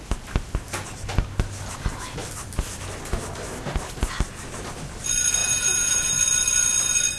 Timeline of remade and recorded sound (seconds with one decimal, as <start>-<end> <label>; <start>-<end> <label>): 0.0-5.4 recorded; 5.4-6.1 remade; 6.1-7.2 recorded